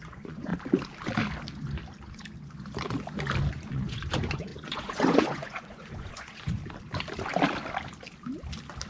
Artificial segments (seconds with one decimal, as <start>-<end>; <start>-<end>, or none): 0.0-0.5; 3.5-6.6